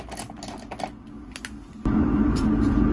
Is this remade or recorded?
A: recorded